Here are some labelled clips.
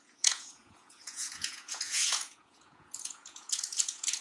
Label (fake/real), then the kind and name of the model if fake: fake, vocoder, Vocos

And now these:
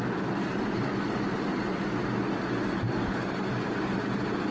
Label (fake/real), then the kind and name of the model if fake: real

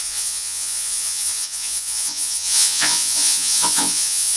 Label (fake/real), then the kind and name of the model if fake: fake, vocoder, Vocos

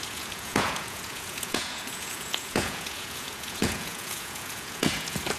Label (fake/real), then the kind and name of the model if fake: fake, vocoder, Vocos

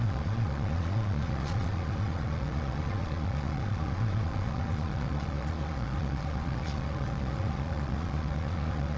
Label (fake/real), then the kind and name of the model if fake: fake, vocoder, Vocos